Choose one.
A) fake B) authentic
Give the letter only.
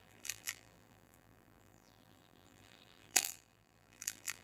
A